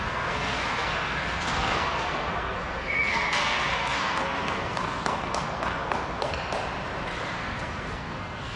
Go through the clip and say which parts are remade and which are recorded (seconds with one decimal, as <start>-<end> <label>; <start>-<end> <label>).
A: 0.0-6.3 remade; 6.3-7.4 recorded; 7.4-8.6 remade